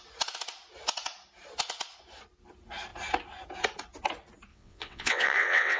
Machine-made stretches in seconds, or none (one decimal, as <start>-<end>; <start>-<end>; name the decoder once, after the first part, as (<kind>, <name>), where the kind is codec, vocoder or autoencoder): 4.5-5.8 (vocoder, WaveNeXt)